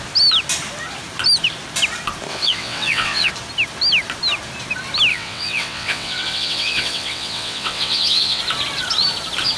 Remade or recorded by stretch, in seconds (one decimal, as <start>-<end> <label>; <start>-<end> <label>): 0.0-2.3 recorded; 2.3-3.3 remade; 3.3-5.1 recorded; 5.1-8.4 remade; 8.4-9.6 recorded